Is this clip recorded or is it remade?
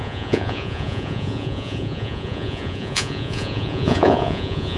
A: remade